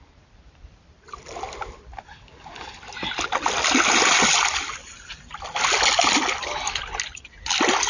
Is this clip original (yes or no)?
yes